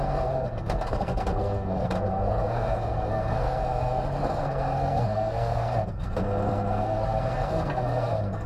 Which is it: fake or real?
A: fake